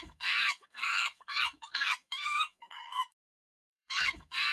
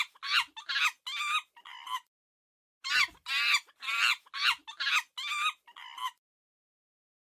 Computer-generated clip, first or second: first